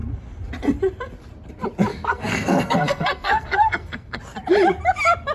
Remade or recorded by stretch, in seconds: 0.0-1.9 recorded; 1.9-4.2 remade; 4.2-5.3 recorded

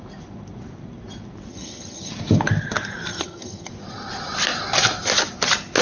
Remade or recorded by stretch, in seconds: 0.0-1.5 recorded; 1.5-2.1 remade; 2.1-3.1 recorded; 3.1-3.7 remade; 3.7-5.8 recorded

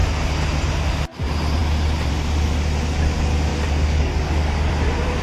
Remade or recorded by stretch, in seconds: 0.0-3.5 recorded; 3.5-4.7 remade; 4.7-5.2 recorded

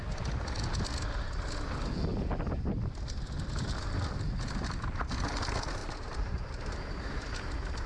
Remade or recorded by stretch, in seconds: 0.0-5.8 recorded; 5.8-7.2 remade; 7.2-7.9 recorded

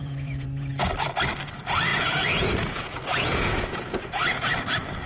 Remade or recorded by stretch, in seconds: 0.0-0.7 remade; 0.7-1.9 recorded; 1.9-4.4 remade; 4.4-5.1 recorded

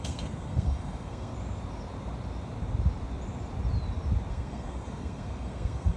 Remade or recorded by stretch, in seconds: 0.0-1.3 remade; 1.3-4.3 recorded; 4.3-6.0 remade

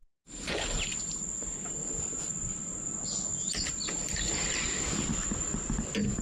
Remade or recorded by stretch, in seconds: 0.0-1.9 recorded; 1.9-6.2 remade